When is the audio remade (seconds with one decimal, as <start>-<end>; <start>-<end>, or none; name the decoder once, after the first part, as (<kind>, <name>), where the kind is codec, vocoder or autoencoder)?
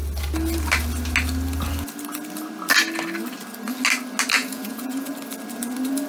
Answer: 4.4-5.1 (vocoder, Vocos)